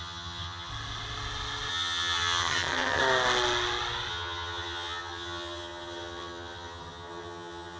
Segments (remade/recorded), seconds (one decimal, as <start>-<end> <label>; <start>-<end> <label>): 0.0-0.7 remade; 0.7-1.7 recorded; 1.7-3.0 remade; 3.0-4.1 recorded; 4.1-7.8 remade